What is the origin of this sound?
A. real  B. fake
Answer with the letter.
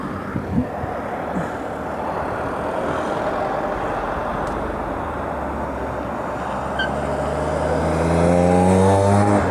A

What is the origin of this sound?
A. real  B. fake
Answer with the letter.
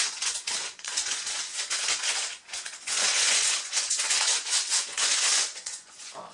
B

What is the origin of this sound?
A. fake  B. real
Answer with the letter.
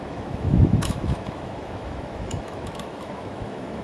A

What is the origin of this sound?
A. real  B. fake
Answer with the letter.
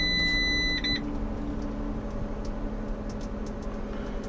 A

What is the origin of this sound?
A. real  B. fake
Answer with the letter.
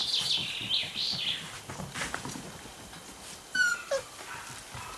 A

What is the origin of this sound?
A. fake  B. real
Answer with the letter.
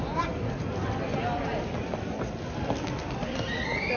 B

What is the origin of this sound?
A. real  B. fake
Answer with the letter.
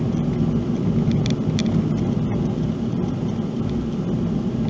A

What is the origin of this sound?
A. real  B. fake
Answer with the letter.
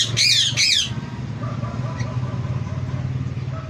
A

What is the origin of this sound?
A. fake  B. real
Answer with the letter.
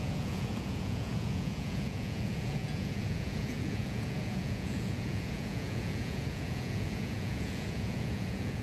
A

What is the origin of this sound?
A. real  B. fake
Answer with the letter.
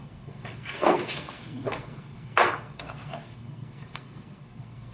B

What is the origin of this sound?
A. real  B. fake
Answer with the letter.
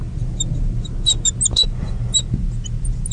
A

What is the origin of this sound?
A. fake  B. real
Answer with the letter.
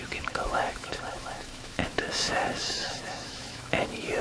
A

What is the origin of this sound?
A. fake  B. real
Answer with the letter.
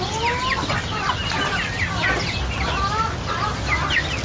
B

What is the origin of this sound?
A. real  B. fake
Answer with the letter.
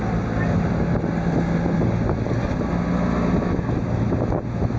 A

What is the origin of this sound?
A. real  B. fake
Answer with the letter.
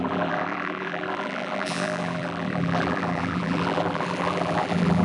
B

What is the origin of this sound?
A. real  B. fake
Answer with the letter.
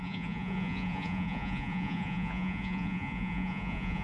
B